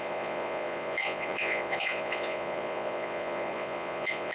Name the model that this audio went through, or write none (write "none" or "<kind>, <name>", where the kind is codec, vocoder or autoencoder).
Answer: vocoder, Vocos